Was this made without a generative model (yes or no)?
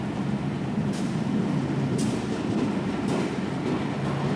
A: yes